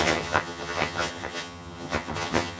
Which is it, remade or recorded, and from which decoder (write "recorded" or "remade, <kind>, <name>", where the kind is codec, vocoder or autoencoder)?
remade, vocoder, HiFi-GAN